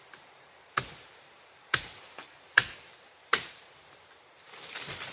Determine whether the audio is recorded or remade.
remade